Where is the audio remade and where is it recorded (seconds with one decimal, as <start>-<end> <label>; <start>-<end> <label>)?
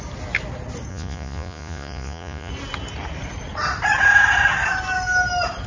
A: 0.0-0.9 recorded; 0.9-2.5 remade; 2.5-5.7 recorded